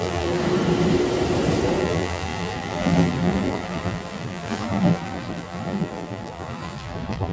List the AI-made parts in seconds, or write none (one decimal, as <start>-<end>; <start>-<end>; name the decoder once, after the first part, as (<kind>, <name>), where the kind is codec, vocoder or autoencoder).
0.0-0.4 (vocoder, BigVGAN v2); 1.8-7.3